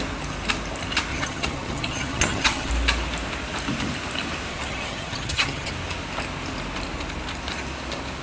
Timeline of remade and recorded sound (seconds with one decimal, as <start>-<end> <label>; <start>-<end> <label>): 0.0-1.1 recorded; 1.1-2.7 remade; 2.7-4.5 recorded; 4.5-5.7 remade; 5.7-8.2 recorded